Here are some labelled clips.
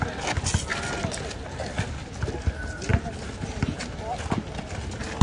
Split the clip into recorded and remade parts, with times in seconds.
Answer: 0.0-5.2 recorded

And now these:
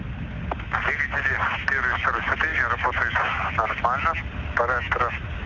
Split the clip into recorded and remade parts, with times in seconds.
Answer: 0.0-5.5 recorded